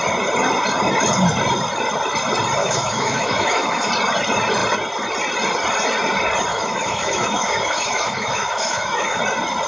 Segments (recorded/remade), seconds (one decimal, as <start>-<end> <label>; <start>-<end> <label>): 0.0-2.6 recorded; 2.6-3.9 remade; 3.9-6.5 recorded; 6.5-9.2 remade; 9.2-9.7 recorded